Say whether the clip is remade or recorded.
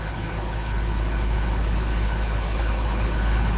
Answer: remade